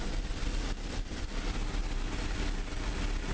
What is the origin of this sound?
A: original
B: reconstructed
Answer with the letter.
A